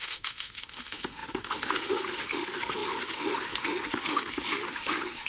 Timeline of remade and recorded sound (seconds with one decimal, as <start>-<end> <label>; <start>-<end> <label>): 0.0-5.3 remade